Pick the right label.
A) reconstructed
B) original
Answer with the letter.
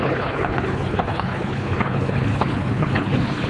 A